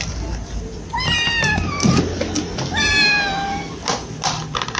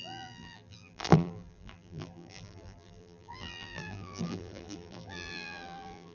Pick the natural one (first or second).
first